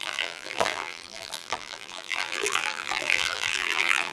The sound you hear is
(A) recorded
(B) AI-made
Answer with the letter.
B